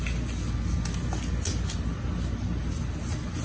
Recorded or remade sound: recorded